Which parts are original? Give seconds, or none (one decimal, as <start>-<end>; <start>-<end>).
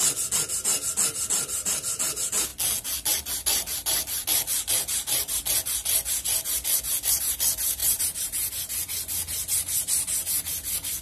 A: 0.0-7.8; 8.5-11.0